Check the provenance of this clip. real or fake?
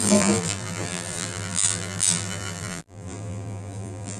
fake